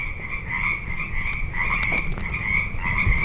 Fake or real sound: real